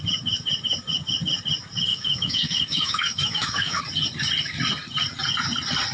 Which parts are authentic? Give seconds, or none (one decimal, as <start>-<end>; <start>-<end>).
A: 0.0-1.9; 3.8-5.9